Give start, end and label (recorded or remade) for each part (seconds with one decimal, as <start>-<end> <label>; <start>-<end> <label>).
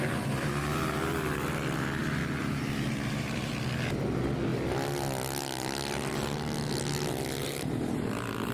0.0-0.5 remade; 0.5-2.0 recorded; 2.0-3.5 remade; 3.5-7.4 recorded; 7.4-8.0 remade; 8.0-8.5 recorded